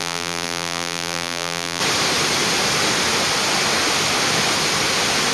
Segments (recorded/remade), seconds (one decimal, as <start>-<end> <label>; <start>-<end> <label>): 0.0-1.8 remade; 1.8-5.3 recorded